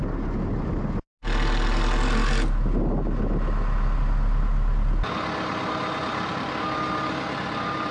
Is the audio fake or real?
real